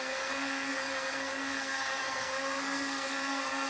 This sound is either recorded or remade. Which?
remade